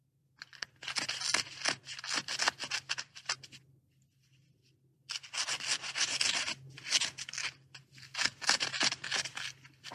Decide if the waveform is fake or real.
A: real